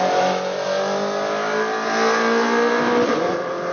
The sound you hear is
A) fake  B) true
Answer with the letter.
B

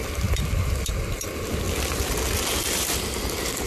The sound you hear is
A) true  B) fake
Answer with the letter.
A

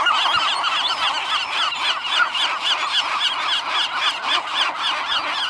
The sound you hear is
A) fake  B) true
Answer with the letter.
B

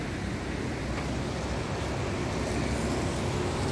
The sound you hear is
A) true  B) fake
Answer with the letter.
A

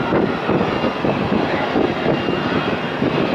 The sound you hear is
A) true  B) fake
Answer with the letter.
A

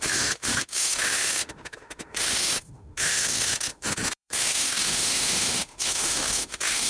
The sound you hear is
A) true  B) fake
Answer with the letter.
B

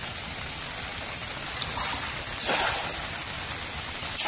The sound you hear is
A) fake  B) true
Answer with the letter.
B